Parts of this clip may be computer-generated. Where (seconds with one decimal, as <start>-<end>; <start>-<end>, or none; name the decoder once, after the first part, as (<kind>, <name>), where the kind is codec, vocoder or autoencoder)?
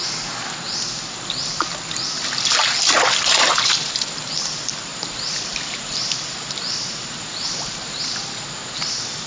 4.9-8.0 (vocoder, BigVGAN v2)